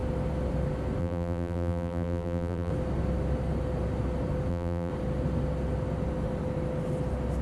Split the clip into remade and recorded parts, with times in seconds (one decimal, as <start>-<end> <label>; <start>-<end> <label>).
0.0-1.0 recorded; 1.0-2.7 remade; 2.7-4.5 recorded; 4.5-4.9 remade; 4.9-7.4 recorded